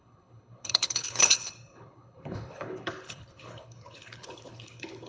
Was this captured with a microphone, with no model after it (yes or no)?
no